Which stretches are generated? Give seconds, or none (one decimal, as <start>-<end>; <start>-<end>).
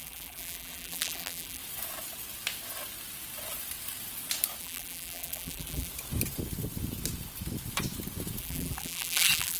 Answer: 0.0-1.6; 4.6-5.9; 8.4-9.6